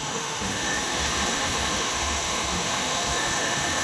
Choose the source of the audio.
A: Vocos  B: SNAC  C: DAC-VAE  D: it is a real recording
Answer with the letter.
C